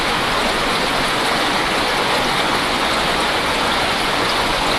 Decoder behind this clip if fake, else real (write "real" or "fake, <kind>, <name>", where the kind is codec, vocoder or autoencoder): fake, vocoder, Vocos